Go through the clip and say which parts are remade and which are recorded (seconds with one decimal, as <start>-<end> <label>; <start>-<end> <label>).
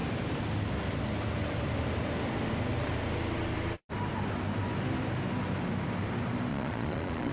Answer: 0.0-6.5 recorded; 6.5-7.3 remade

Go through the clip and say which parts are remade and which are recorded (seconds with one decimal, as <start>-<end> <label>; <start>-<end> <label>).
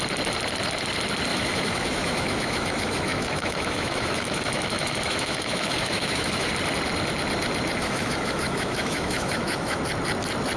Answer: 0.0-1.3 recorded; 1.3-6.5 remade; 6.5-7.8 recorded; 7.8-9.8 remade; 9.8-10.6 recorded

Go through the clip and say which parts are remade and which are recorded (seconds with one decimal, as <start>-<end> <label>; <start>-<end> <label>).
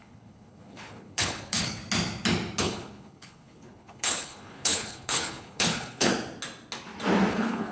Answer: 0.0-1.8 remade; 1.8-2.6 recorded; 2.6-6.1 remade; 6.1-7.3 recorded; 7.3-7.7 remade